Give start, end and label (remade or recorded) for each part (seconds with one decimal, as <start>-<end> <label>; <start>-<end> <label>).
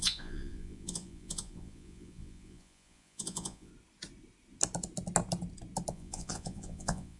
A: 0.0-3.7 remade; 3.7-5.9 recorded; 5.9-7.2 remade